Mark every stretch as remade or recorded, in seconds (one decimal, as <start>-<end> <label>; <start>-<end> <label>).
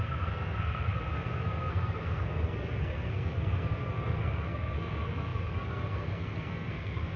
0.0-7.2 remade